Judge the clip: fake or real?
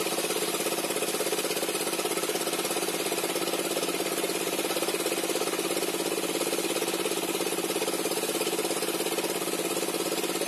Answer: real